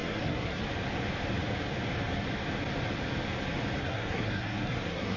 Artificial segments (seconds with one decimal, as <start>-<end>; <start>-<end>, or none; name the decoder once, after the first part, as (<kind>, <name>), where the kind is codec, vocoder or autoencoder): 0.0-0.6 (codec, SNAC); 3.8-5.2